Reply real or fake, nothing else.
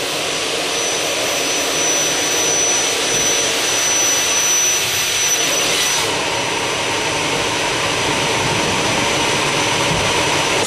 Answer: real